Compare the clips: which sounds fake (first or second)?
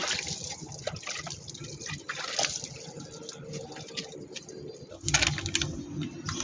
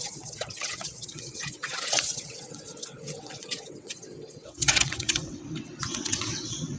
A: second